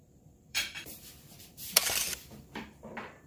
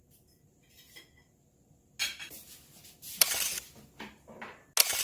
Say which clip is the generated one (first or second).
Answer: first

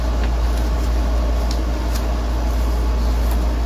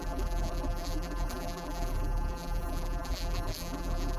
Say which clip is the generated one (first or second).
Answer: second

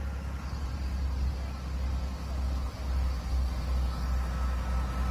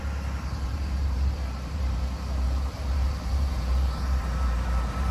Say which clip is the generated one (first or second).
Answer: second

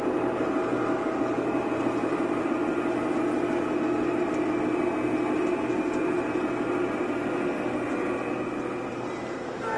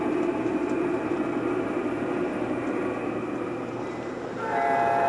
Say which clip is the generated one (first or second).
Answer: second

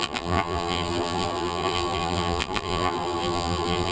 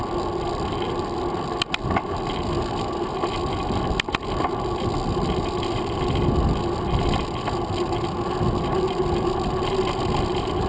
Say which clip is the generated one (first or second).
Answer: first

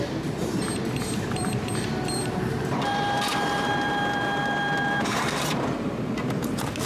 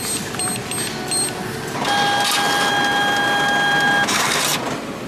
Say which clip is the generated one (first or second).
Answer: first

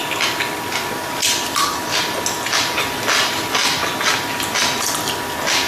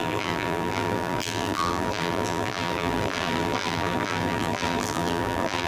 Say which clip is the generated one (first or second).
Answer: second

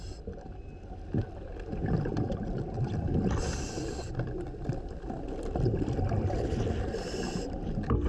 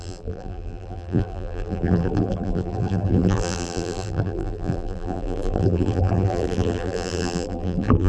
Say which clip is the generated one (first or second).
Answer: second